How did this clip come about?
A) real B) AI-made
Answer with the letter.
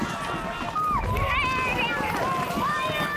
A